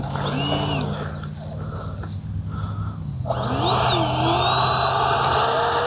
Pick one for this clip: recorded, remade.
recorded